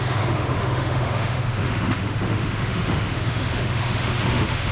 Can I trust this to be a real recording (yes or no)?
no